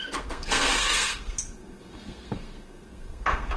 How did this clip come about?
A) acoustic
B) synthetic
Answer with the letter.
B